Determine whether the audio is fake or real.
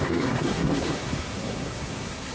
fake